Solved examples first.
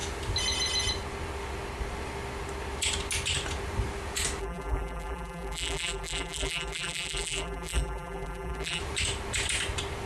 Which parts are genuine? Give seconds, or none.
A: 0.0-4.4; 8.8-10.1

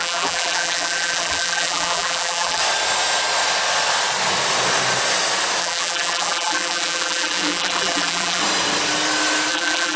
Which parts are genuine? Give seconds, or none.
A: 2.6-5.6; 8.4-9.5

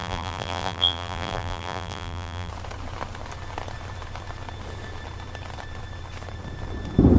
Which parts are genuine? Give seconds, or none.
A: 2.5-7.2

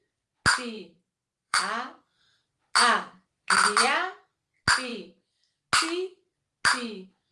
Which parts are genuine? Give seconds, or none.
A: 0.0-0.5; 1.6-7.3

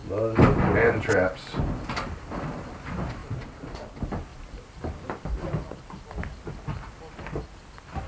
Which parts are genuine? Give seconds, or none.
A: 0.0-3.2; 3.9-8.1

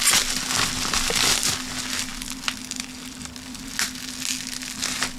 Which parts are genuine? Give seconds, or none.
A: 0.0-2.1; 3.7-5.2

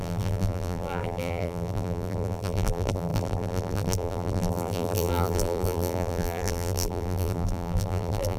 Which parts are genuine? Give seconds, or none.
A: none

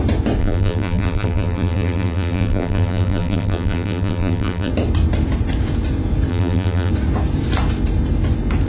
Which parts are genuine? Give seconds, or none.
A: 0.0-0.4; 4.7-6.3; 6.9-8.7